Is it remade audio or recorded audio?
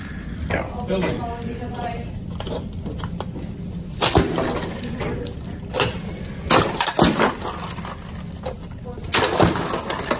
recorded